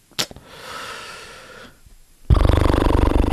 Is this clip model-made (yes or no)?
no